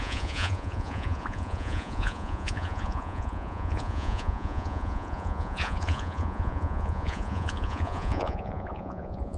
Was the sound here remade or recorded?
remade